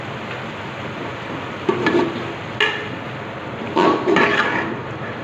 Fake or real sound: real